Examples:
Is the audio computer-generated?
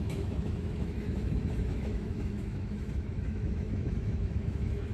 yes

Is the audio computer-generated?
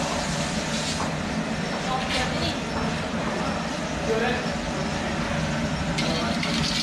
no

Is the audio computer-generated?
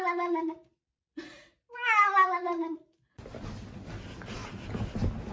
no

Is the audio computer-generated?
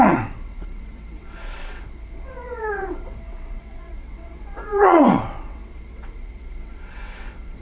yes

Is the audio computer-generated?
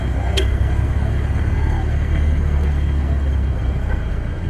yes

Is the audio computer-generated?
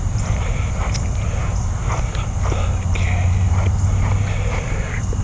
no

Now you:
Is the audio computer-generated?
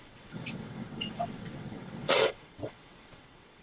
yes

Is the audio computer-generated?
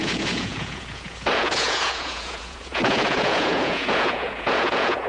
yes